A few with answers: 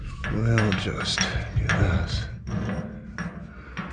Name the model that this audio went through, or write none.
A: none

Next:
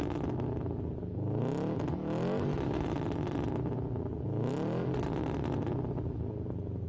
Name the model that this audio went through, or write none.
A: none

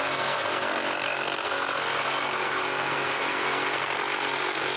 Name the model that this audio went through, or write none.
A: codec, SNAC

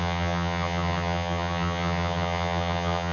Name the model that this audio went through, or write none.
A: vocoder, HiFi-GAN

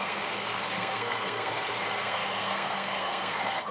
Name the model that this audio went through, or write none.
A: codec, SNAC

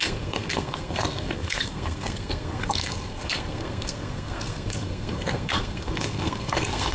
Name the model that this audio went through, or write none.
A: codec, SNAC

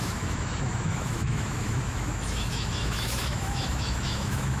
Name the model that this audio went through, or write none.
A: autoencoder, DAC-VAE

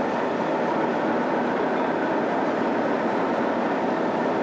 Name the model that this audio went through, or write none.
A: none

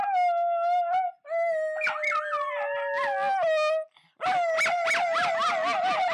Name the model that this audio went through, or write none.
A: none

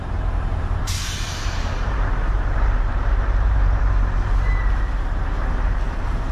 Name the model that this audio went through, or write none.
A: vocoder, BigVGAN v2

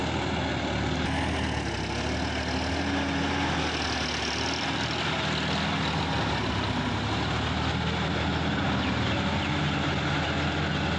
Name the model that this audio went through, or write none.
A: none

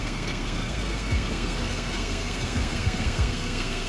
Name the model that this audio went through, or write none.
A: codec, SNAC